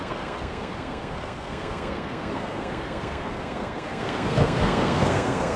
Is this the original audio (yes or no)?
no